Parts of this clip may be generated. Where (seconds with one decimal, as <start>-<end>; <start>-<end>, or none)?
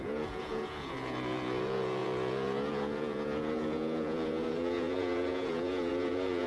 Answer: 0.0-6.5